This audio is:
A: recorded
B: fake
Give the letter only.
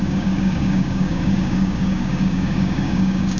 B